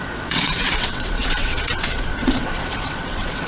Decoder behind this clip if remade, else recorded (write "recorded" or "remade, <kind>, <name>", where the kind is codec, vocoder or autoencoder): remade, vocoder, WaveNeXt